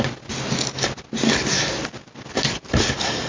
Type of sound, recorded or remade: recorded